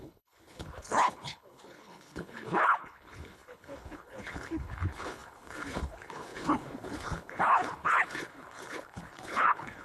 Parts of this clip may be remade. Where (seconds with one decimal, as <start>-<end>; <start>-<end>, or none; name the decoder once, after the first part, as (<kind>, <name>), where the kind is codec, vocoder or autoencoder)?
0.0-9.8 (codec, HILCodec)